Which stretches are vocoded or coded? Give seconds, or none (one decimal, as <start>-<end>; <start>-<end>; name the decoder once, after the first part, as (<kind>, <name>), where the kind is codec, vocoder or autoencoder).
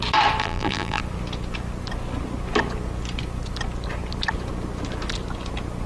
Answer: 0.4-1.0 (vocoder, BigVGAN v2)